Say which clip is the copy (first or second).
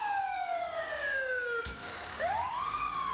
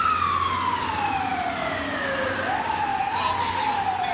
first